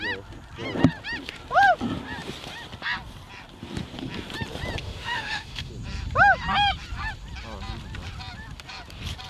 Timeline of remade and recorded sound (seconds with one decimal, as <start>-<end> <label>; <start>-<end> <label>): 0.0-4.8 recorded; 4.8-5.7 remade; 5.7-9.3 recorded